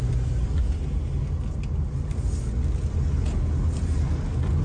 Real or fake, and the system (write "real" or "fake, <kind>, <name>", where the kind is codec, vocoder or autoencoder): real